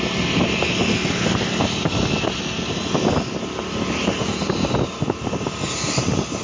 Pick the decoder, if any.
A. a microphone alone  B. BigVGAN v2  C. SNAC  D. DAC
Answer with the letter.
A